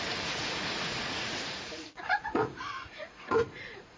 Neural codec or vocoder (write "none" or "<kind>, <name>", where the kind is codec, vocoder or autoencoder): vocoder, Vocos